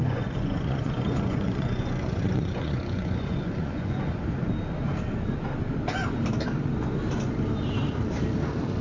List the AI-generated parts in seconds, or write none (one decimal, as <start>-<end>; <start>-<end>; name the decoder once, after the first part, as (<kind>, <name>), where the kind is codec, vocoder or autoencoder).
0.0-4.2 (vocoder, Vocos)